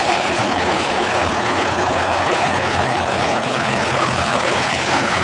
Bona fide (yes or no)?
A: no